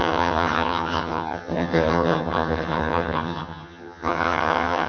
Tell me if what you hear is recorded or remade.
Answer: remade